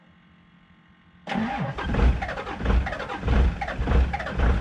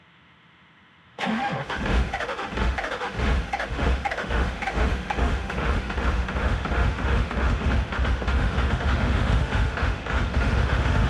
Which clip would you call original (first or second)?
first